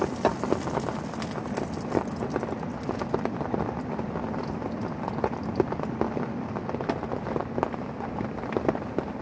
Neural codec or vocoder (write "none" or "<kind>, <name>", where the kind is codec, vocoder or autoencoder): none